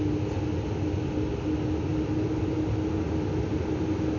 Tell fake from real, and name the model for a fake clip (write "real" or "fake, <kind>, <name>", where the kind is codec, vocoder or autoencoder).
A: real